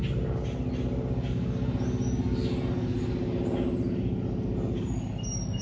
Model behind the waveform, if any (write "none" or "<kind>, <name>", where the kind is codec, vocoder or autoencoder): none